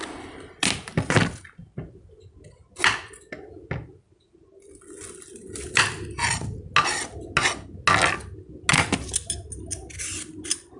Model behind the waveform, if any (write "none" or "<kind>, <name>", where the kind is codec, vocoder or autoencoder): none